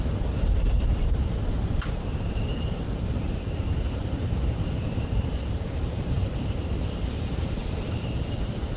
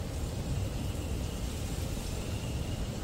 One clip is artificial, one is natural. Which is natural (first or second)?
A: second